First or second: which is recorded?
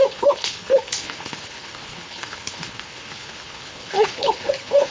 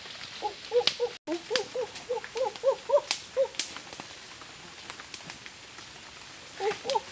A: second